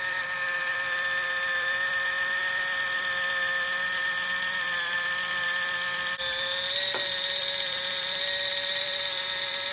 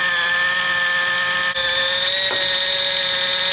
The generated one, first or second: first